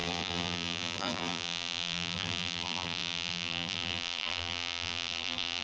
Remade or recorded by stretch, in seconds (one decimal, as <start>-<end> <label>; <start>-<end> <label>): 0.0-5.6 remade